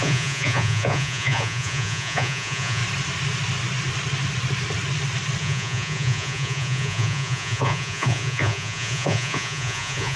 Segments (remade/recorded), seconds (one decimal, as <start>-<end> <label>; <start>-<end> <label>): 0.0-2.8 remade; 2.8-5.4 recorded; 5.4-10.2 remade